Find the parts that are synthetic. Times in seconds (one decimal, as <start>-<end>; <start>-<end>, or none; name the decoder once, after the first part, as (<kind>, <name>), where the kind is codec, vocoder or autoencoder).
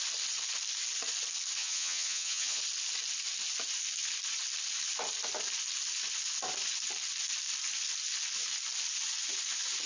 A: 1.6-2.6 (vocoder, HiFi-GAN)